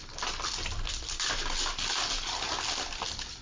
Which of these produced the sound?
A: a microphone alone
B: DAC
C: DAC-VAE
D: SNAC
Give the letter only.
A